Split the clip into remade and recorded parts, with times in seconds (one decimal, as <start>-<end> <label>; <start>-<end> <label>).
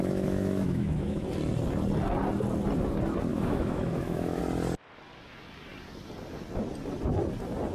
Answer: 0.0-1.2 remade; 1.2-3.3 recorded; 3.3-4.4 remade; 4.4-7.7 recorded